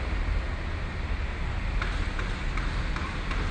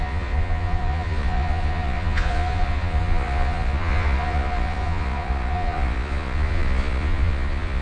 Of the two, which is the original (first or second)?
first